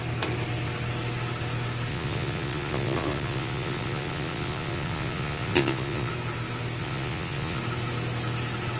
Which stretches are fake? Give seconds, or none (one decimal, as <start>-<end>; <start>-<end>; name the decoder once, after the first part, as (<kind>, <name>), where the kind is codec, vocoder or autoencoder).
1.9-6.1 (vocoder, Vocos); 6.8-7.6